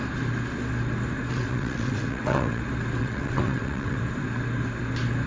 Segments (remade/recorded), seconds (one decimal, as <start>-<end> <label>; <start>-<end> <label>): 0.0-1.3 recorded; 1.3-2.6 remade; 2.6-3.0 recorded; 3.0-4.0 remade; 4.0-5.3 recorded